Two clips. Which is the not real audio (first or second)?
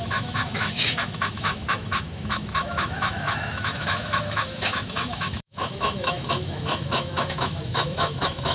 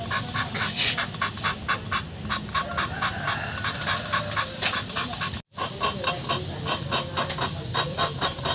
first